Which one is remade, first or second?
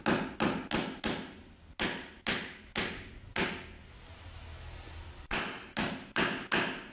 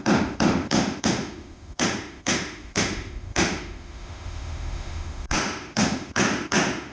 second